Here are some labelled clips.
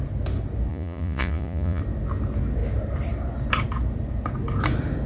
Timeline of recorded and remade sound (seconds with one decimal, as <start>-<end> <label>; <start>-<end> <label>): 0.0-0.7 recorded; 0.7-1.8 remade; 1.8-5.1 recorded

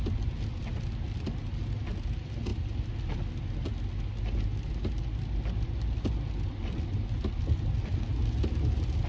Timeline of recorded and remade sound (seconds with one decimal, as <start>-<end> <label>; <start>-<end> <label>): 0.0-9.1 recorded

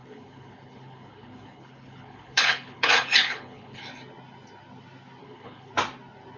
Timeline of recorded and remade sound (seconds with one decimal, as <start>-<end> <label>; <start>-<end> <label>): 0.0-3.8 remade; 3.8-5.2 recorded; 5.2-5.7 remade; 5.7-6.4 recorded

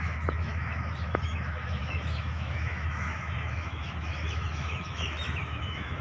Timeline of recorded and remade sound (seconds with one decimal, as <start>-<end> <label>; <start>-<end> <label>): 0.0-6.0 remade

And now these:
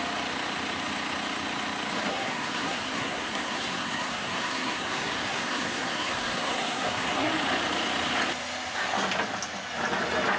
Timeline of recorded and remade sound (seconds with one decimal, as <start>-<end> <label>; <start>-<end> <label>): 0.0-2.1 recorded; 2.1-7.3 remade; 7.3-10.4 recorded

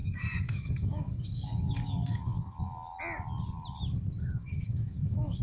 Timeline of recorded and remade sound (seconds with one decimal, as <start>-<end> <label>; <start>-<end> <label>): 0.0-3.0 remade; 3.0-4.2 recorded; 4.2-5.4 remade

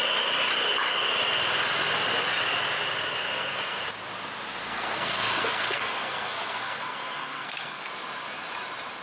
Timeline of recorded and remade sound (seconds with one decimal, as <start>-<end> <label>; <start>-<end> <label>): 0.0-3.2 recorded; 3.2-3.8 remade; 3.8-4.5 recorded; 4.5-7.9 remade; 7.9-9.0 recorded